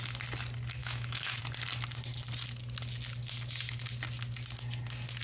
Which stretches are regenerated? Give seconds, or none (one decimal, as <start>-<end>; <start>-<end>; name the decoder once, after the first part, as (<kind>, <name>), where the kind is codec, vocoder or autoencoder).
0.8-1.4 (autoencoder, DAC-VAE)